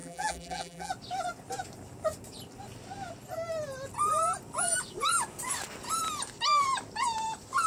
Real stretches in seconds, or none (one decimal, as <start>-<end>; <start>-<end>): 0.9-7.7